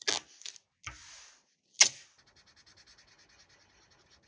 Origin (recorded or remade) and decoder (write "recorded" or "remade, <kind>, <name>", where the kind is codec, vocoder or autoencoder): recorded